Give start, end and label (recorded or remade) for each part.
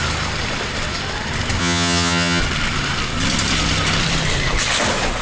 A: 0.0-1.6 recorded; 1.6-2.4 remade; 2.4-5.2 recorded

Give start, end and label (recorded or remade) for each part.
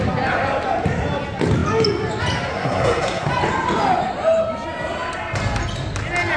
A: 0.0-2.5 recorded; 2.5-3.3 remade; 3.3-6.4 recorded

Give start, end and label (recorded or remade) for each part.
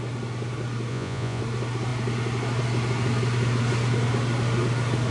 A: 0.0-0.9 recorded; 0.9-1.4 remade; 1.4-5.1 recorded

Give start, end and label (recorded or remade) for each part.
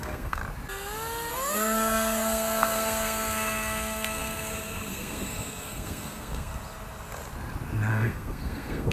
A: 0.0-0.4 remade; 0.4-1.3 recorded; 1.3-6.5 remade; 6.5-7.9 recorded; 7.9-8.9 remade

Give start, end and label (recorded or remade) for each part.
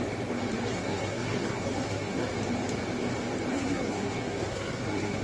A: 0.0-0.7 recorded; 0.7-2.3 remade; 2.3-3.5 recorded; 3.5-5.2 remade